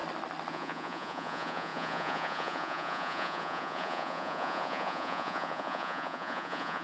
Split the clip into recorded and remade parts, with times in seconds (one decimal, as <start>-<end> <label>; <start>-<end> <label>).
0.0-0.5 recorded; 0.5-6.8 remade

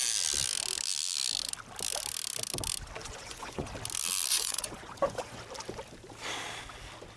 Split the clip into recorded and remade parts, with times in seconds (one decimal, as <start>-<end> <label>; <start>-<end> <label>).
0.0-3.0 recorded; 3.0-3.7 remade; 3.7-4.3 recorded; 4.3-5.4 remade; 5.4-7.2 recorded

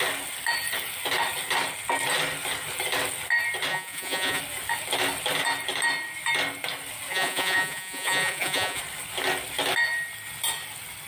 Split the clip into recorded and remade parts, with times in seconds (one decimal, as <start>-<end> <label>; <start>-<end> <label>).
0.0-3.7 recorded; 3.7-4.4 remade; 4.4-7.1 recorded; 7.1-8.8 remade; 8.8-11.1 recorded

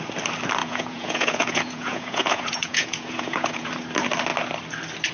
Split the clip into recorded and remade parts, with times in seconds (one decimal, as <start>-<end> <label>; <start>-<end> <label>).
0.0-0.6 recorded; 0.6-3.7 remade; 3.7-5.1 recorded

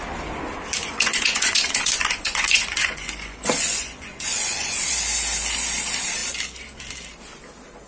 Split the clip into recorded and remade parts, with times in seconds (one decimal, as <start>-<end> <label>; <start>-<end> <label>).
0.0-0.8 recorded; 0.8-4.8 remade; 4.8-7.9 recorded

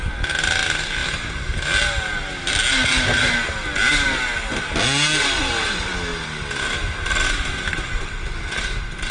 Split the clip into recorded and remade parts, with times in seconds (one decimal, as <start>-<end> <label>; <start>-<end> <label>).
0.0-9.1 recorded

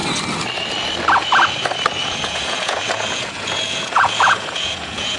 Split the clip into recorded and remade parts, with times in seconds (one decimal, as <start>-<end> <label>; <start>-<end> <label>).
0.0-2.0 recorded; 2.0-5.2 remade